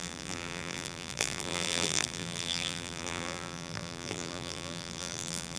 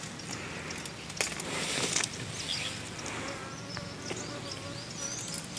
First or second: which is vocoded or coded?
first